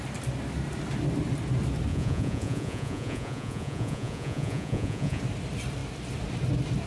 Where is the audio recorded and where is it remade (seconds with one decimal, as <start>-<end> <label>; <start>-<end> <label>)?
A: 0.0-1.9 recorded; 1.9-5.2 remade; 5.2-6.9 recorded